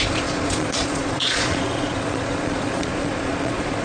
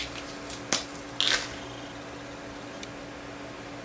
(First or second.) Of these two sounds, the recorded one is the second